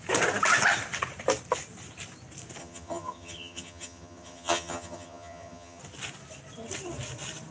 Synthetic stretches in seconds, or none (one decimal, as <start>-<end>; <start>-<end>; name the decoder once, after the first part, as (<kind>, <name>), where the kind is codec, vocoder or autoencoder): 2.6-5.8 (vocoder, HiFi-GAN)